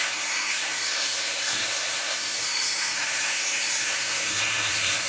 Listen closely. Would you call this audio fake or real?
fake